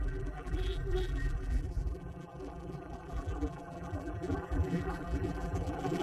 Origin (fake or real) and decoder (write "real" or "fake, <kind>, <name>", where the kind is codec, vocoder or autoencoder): fake, vocoder, BigVGAN v2